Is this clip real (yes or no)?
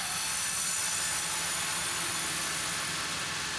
yes